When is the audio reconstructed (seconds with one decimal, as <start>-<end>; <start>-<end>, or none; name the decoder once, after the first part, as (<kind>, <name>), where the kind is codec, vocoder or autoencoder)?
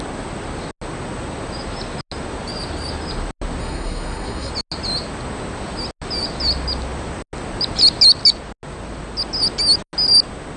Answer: 3.6-4.5 (codec, SNAC)